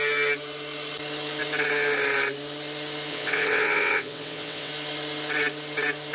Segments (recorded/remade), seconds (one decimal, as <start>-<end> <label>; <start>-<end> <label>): 0.0-3.1 recorded; 3.1-4.7 remade; 4.7-6.1 recorded